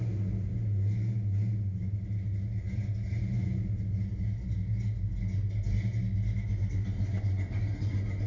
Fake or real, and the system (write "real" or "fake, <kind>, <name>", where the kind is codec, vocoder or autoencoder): real